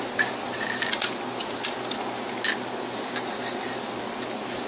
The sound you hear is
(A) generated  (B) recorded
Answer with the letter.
B